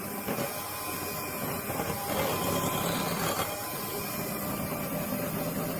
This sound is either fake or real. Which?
real